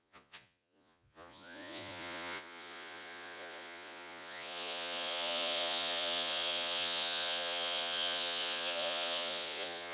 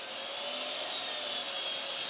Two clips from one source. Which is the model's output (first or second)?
first